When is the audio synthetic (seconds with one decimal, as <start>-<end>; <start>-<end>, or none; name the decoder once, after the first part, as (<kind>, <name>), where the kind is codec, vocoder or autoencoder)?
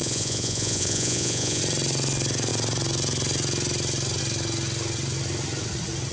0.0-1.6 (vocoder, Vocos)